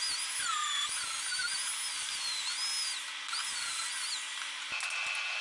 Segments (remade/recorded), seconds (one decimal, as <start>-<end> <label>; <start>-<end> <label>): 0.0-5.4 recorded